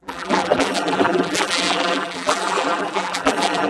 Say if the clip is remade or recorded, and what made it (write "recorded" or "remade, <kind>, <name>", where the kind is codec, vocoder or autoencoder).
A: remade, vocoder, BigVGAN v2